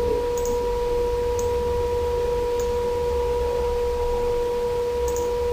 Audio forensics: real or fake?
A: real